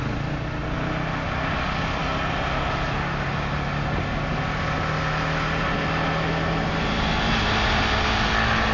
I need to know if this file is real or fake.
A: real